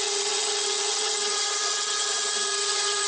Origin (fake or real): fake